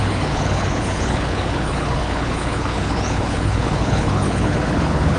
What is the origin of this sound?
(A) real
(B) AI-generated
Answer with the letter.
B